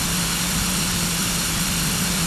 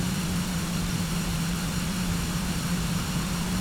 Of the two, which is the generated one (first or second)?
second